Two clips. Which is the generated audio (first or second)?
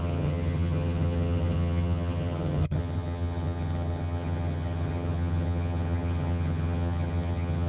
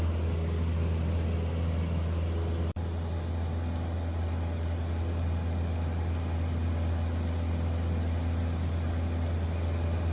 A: first